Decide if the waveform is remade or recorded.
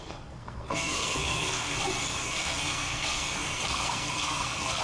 remade